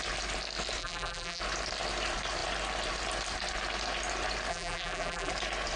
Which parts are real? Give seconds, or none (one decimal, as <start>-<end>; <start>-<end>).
0.0-0.8; 1.4-4.5; 5.3-5.8